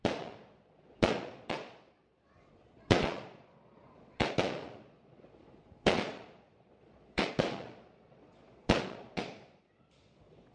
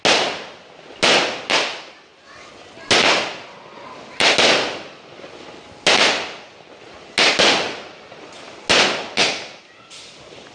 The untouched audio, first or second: second